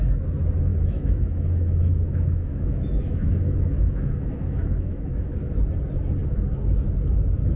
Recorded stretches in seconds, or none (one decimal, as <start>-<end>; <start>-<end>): 0.0-0.7; 5.3-7.6